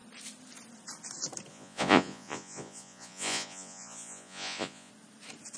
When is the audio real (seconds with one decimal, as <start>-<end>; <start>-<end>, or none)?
0.0-1.5; 4.9-5.6